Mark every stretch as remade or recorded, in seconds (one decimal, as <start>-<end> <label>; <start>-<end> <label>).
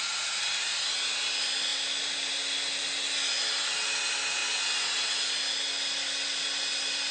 0.0-7.1 recorded